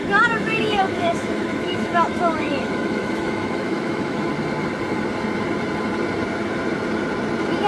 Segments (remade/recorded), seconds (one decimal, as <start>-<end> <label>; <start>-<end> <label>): 0.0-4.3 remade; 4.3-7.7 recorded